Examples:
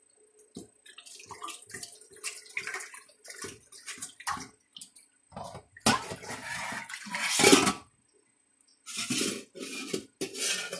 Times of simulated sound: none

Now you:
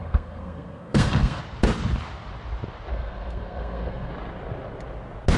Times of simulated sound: 0.0-1.4; 2.9-4.1

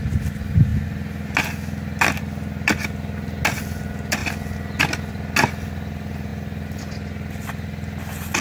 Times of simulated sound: none

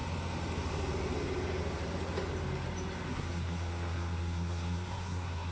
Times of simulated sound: 3.1-5.5

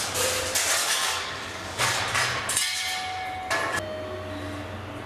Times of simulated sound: 0.8-2.0